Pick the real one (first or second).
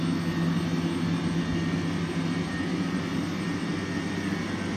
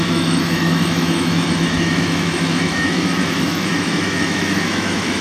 first